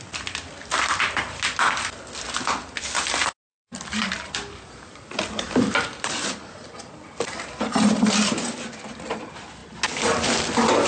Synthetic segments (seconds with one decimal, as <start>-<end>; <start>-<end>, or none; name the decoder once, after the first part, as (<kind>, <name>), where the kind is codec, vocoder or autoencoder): 3.5-8.3 (vocoder, BigVGAN v2)